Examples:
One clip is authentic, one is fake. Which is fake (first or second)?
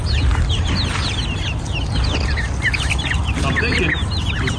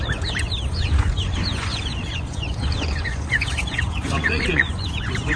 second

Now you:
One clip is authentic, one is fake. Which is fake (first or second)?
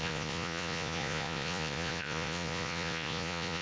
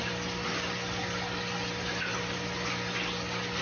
first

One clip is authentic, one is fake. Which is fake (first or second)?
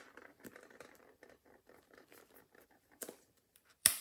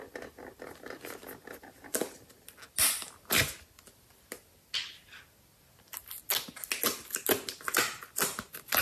first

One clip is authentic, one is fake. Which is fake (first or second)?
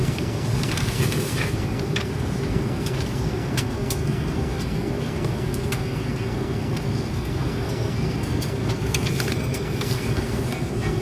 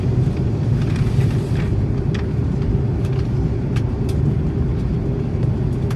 first